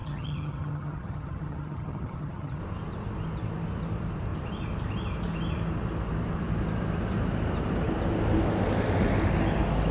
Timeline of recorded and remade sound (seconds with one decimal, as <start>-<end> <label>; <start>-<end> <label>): 0.0-2.6 remade; 2.6-9.9 recorded